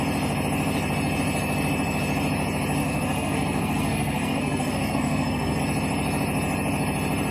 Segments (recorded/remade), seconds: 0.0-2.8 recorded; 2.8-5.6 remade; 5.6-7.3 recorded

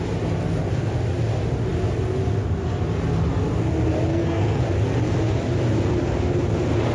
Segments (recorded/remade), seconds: 0.0-4.1 recorded; 4.1-4.6 remade; 4.6-6.9 recorded

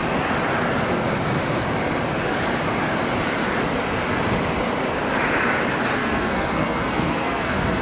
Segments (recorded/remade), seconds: 0.0-6.0 recorded; 6.0-7.8 remade